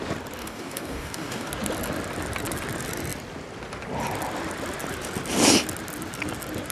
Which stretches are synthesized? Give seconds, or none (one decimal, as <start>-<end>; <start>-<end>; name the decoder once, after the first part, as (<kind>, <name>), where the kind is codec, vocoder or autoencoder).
0.4-1.5 (codec, DAC)